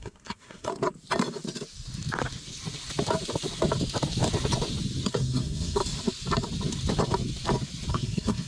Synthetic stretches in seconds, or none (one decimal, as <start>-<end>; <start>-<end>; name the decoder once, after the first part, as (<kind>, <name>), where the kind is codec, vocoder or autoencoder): 0.0-0.7 (codec, SNAC); 5.1-5.8; 7.9-8.5